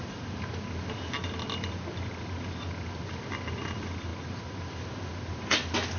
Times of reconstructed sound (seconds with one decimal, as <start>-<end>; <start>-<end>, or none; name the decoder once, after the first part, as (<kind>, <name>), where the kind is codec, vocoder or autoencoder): none